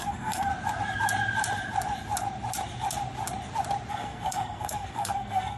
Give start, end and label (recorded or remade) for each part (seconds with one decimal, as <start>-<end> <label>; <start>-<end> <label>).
0.0-0.5 remade; 0.5-3.9 recorded; 3.9-5.6 remade